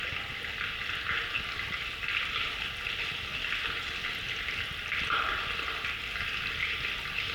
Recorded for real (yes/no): yes